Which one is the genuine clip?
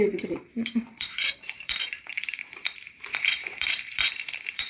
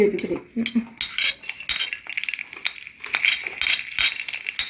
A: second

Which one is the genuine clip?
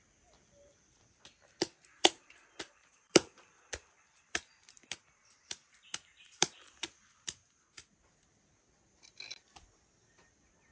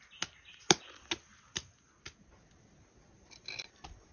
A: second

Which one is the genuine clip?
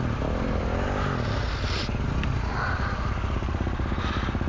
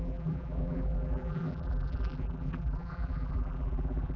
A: first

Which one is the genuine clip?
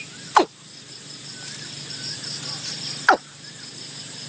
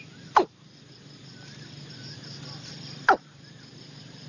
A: first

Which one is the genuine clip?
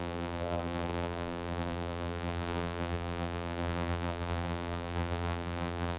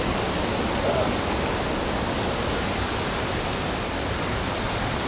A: second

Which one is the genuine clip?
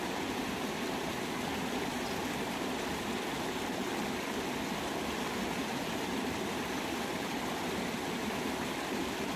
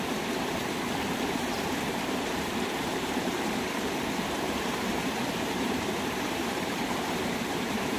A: first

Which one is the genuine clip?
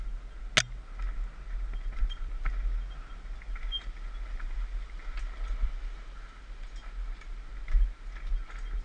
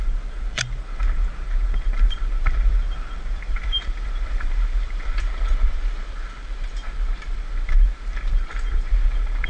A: first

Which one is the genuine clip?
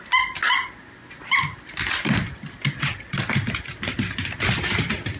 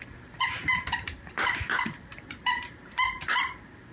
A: first